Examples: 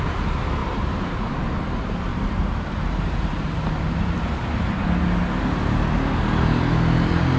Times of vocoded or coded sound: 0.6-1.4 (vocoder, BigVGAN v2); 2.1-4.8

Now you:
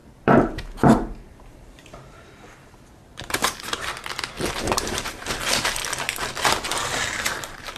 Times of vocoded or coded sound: 0.0-3.4 (vocoder, BigVGAN v2); 4.5-5.8; 7.2-7.8

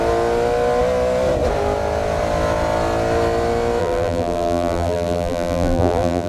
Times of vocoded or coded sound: 3.8-6.3 (vocoder, BigVGAN v2)